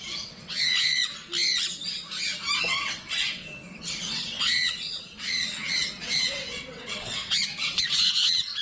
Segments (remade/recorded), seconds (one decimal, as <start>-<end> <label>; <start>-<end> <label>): 0.0-0.9 remade; 0.9-2.6 recorded; 2.6-8.6 remade